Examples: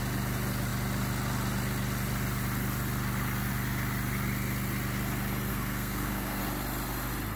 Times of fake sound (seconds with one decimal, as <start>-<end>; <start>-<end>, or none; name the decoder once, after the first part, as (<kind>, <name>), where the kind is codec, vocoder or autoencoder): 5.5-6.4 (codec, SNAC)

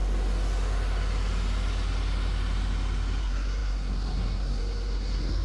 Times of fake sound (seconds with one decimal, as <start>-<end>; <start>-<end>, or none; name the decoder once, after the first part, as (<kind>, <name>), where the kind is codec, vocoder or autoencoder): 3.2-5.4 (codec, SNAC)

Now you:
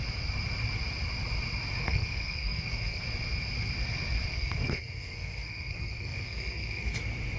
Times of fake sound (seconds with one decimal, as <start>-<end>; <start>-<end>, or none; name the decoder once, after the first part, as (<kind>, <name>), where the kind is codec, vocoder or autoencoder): 1.8-3.0 (codec, SNAC); 4.3-7.0